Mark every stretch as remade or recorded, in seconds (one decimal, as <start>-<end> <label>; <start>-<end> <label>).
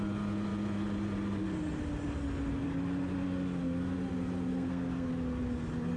0.0-4.5 recorded; 4.5-5.1 remade; 5.1-6.0 recorded